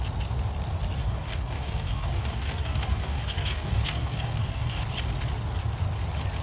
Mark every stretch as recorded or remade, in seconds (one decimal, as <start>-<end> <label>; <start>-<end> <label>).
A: 0.0-1.0 recorded; 1.0-4.8 remade; 4.8-6.4 recorded